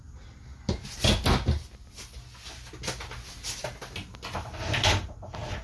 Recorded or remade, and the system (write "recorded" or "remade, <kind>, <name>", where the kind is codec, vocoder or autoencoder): recorded